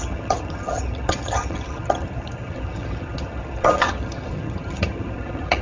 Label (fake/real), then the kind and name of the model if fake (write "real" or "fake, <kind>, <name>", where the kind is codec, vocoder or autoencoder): fake, vocoder, HiFi-GAN